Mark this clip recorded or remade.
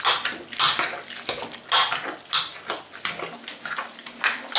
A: recorded